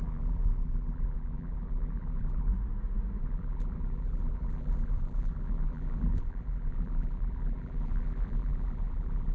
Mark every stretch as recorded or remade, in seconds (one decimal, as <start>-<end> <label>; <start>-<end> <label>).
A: 0.0-2.5 remade; 2.5-3.2 recorded; 3.2-9.3 remade